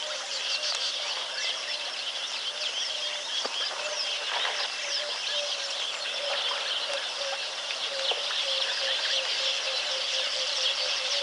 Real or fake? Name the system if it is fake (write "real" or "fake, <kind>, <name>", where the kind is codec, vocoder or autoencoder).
real